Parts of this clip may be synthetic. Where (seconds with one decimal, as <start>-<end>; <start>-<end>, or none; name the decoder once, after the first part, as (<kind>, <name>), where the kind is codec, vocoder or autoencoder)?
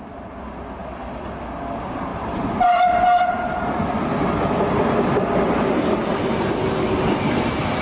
2.1-3.6 (vocoder, BigVGAN v2); 4.1-5.7